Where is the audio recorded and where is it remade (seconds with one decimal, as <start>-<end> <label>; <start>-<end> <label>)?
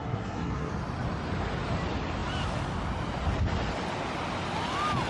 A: 0.0-0.7 remade; 0.7-5.1 recorded